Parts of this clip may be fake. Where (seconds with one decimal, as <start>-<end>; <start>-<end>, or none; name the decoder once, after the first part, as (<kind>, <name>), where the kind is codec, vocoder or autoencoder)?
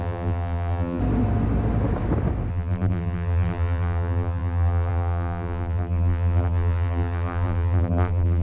0.0-1.0 (vocoder, BigVGAN v2); 2.5-8.4